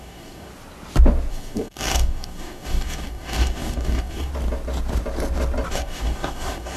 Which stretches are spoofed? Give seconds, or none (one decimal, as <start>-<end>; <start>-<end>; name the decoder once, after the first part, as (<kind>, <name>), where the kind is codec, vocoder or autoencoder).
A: 0.0-0.5 (codec, DAC); 1.3-4.3; 5.7-6.8